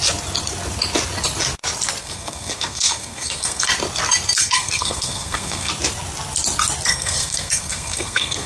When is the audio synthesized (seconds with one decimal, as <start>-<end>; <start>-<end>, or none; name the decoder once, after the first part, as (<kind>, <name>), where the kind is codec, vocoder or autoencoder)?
2.0-3.7 (codec, SNAC); 4.4-5.7; 6.9-8.5

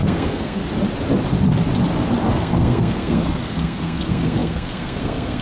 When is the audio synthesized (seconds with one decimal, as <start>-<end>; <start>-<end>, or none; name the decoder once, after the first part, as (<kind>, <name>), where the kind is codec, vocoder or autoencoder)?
0.0-0.6 (codec, SNAC); 2.3-5.4

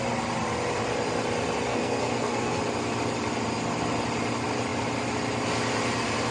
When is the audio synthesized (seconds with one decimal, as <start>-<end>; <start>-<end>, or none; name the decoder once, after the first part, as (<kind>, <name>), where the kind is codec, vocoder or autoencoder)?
1.7-2.6 (codec, SNAC)

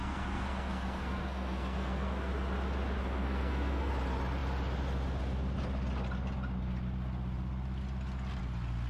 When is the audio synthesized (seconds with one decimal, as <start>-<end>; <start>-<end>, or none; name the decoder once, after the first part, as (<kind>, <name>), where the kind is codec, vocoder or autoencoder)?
0.0-2.3 (codec, SNAC); 3.0-3.9

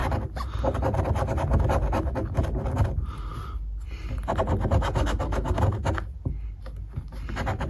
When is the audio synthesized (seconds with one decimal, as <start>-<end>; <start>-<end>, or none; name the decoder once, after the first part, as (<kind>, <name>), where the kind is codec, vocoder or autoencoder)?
5.0-5.6 (codec, SNAC)